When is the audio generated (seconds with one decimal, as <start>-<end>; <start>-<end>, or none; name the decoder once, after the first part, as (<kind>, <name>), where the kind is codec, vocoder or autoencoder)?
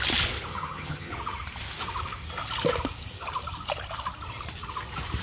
0.5-1.1 (vocoder, HiFi-GAN)